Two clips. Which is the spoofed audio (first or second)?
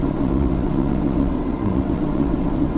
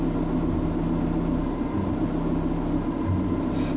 first